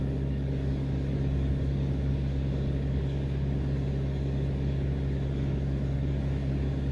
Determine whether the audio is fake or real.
fake